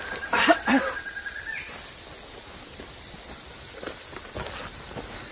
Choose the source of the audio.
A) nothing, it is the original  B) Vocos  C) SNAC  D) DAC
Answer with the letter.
A